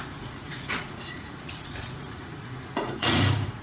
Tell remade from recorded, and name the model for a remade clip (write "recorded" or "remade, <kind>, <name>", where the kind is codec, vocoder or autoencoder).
remade, vocoder, Vocos